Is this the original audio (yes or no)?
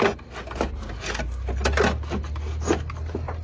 yes